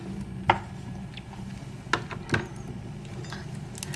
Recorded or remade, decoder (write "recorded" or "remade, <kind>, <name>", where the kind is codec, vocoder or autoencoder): recorded